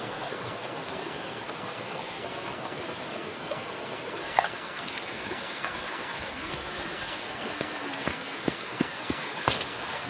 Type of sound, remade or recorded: remade